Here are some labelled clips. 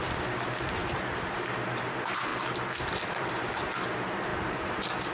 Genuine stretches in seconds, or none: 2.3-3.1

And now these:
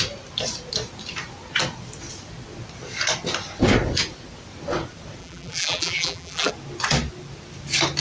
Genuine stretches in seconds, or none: 0.0-5.2; 6.5-8.0

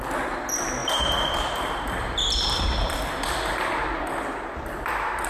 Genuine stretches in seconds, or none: 0.0-0.8; 4.0-5.3

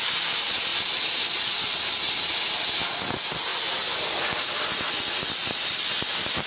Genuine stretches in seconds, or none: 0.0-6.5

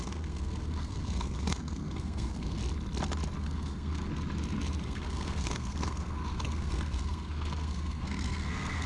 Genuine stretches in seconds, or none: 2.6-3.4; 4.1-4.8

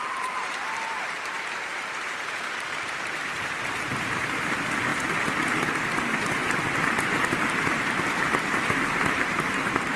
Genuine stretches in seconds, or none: 4.9-7.9